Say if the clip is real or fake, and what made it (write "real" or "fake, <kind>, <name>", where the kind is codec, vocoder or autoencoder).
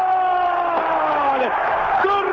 real